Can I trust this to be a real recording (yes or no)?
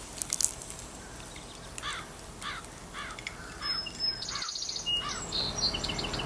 yes